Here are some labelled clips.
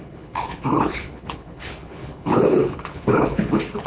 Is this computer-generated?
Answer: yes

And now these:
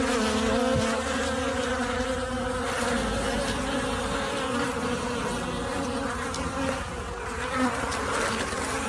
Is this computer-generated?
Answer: no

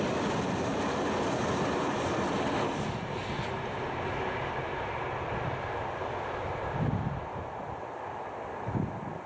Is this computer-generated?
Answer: no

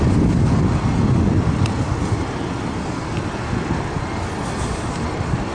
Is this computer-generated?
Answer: no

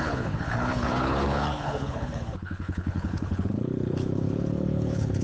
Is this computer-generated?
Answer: yes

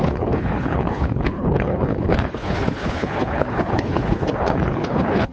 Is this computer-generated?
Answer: yes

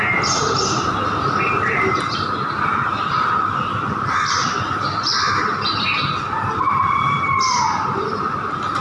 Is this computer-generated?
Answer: no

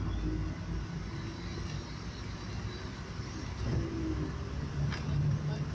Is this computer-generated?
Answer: no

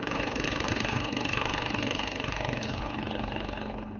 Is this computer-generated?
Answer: yes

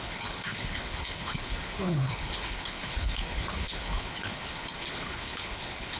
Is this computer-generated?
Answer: yes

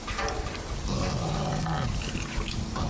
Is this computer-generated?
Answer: no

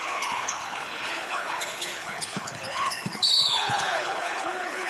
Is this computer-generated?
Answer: yes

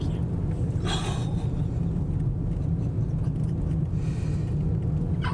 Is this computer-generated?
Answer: no